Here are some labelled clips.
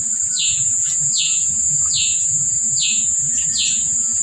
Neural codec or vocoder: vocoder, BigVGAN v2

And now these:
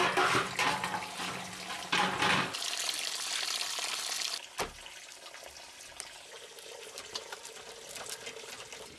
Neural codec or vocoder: none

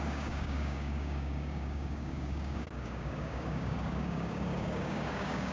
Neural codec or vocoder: codec, DAC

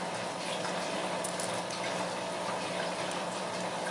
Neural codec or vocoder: none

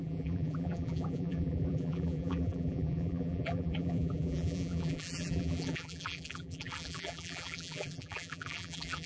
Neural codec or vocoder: vocoder, BigVGAN v2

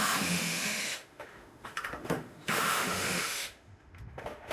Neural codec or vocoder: autoencoder, DAC-VAE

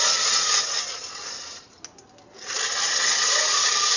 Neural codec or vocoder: none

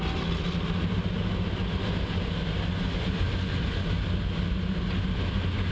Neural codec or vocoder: none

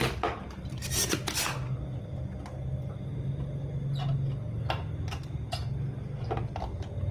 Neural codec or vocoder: none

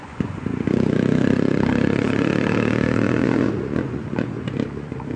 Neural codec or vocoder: vocoder, Vocos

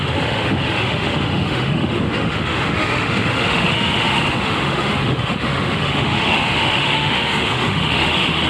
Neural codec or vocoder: autoencoder, DAC-VAE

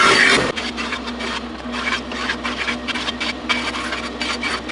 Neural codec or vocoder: none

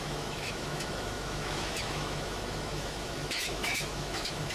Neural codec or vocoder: autoencoder, DAC-VAE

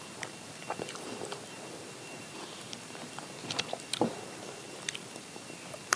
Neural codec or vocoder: vocoder, BigVGAN v2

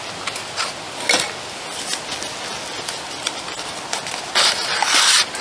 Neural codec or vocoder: none